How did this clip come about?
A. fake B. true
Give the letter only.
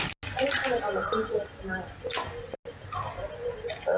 B